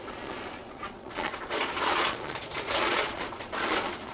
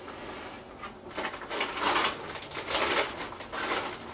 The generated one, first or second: first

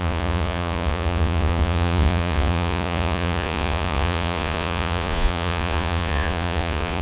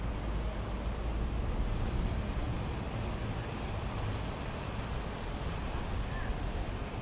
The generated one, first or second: first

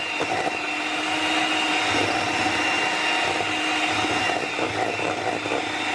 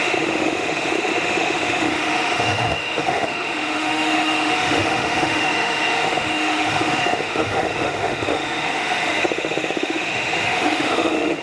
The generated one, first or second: second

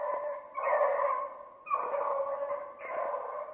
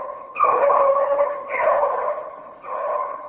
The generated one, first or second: second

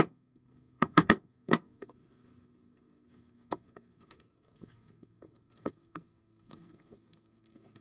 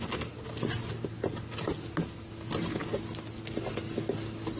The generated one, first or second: first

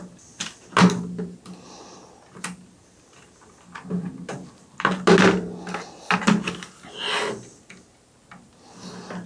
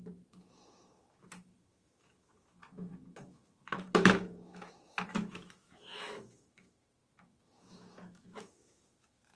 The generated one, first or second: second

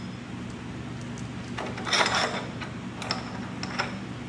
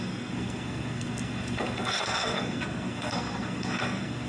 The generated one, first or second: second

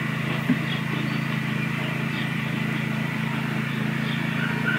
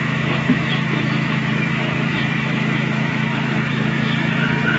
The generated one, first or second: second